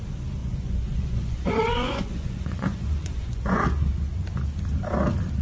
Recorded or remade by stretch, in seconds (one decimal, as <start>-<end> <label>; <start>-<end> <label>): 0.0-0.4 recorded; 0.4-3.6 remade; 3.6-5.4 recorded